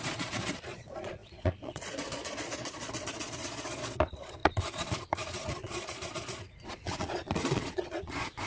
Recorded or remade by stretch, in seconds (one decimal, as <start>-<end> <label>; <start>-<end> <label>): 0.0-8.5 remade